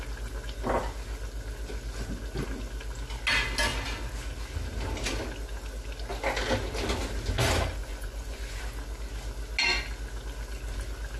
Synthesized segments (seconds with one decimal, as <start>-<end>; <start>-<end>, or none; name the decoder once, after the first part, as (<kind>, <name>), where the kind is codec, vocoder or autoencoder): 7.8-8.6 (vocoder, Vocos)